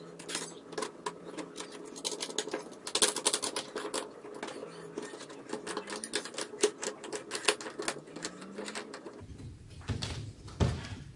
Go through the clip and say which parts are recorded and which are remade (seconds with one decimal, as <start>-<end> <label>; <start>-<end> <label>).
0.0-11.2 recorded